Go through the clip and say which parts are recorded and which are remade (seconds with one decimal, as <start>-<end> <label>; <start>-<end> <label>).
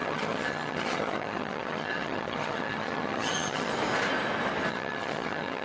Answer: 0.0-3.7 remade; 3.7-4.7 recorded; 4.7-5.6 remade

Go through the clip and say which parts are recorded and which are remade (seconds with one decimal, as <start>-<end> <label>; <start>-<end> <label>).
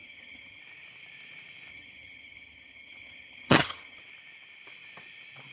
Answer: 0.0-0.6 remade; 0.6-1.7 recorded; 1.7-4.0 remade; 4.0-5.5 recorded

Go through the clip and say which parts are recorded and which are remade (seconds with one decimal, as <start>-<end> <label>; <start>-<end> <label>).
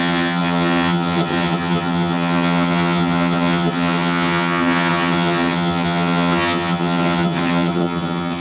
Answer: 0.0-8.4 remade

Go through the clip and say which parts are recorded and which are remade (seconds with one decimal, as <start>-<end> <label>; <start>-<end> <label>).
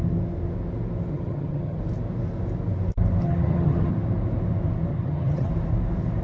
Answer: 0.0-1.1 recorded; 1.1-1.8 remade; 1.8-3.2 recorded; 3.2-3.9 remade; 3.9-4.9 recorded; 4.9-5.5 remade; 5.5-6.2 recorded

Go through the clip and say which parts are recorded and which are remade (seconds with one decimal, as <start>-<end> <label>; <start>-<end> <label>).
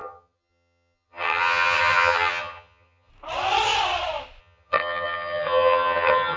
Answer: 0.0-3.1 remade; 3.1-4.4 recorded; 4.4-6.4 remade